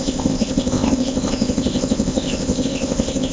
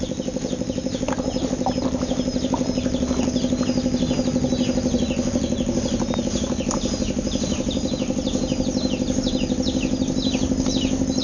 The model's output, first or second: first